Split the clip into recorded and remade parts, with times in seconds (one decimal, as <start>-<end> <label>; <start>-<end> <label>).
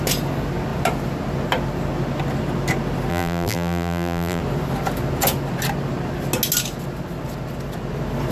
0.0-3.1 recorded; 3.1-4.4 remade; 4.4-8.3 recorded